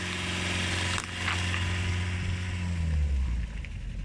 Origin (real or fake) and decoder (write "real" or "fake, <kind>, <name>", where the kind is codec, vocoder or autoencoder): real